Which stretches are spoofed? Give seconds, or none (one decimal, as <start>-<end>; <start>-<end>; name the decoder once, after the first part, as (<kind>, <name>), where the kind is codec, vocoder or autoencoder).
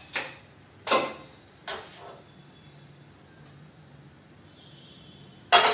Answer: none